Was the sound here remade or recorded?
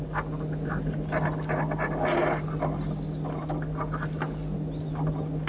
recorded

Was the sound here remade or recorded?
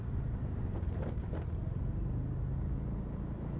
recorded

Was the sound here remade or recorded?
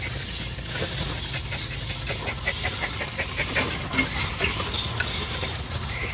recorded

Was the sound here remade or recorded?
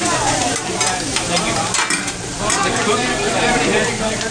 remade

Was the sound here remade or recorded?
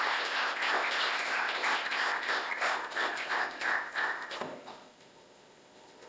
remade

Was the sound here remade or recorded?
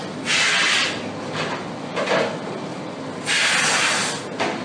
recorded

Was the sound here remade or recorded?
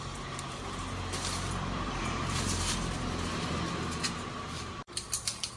remade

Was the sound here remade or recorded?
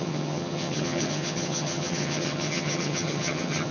remade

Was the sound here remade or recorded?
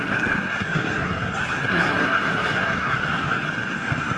remade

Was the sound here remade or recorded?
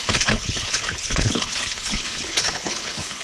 remade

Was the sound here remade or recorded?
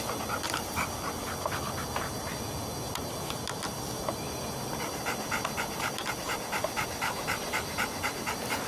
recorded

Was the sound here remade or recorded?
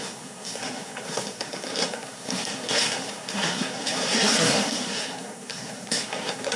remade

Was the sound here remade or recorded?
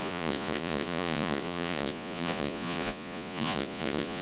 remade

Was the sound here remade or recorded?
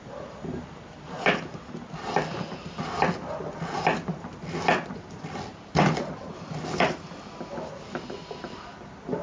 recorded